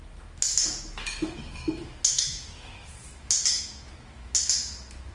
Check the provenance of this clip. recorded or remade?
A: remade